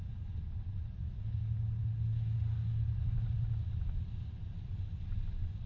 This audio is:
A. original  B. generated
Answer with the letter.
A